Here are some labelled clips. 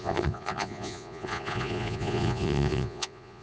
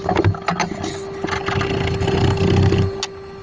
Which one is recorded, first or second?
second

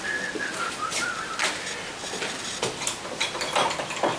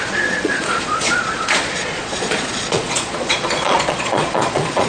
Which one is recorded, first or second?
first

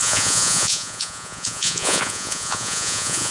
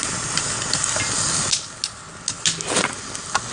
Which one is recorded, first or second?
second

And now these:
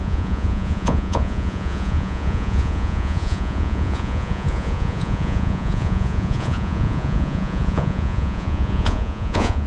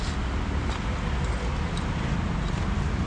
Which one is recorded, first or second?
second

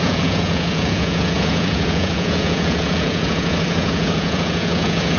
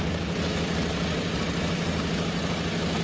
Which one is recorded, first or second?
second